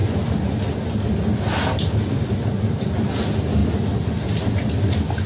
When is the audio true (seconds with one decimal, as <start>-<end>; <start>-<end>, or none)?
0.0-5.3